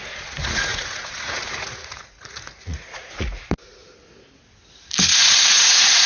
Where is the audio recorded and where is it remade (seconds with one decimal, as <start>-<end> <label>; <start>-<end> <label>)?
0.0-3.8 remade; 3.8-5.0 recorded; 5.0-6.1 remade